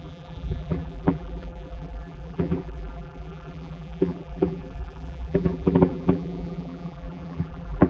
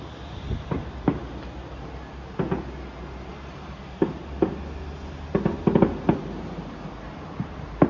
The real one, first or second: second